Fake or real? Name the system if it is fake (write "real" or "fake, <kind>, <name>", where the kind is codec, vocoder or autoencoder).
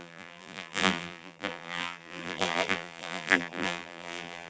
fake, vocoder, BigVGAN v2